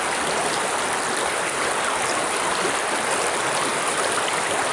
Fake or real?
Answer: real